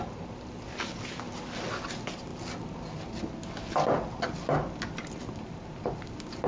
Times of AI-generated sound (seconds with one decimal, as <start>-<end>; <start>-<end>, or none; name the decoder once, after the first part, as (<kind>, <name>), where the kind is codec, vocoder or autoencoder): none